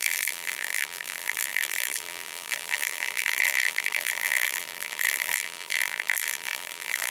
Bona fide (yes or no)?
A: no